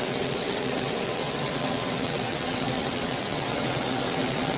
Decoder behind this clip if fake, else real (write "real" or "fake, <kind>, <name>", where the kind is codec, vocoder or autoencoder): fake, vocoder, WaveNeXt